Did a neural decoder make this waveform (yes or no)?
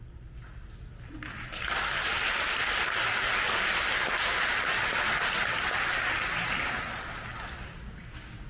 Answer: no